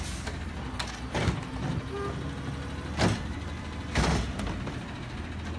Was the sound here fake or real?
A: real